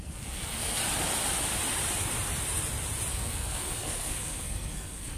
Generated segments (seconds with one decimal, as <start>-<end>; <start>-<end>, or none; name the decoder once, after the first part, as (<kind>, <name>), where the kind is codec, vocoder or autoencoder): 0.0-0.8 (codec, SNAC); 3.1-5.2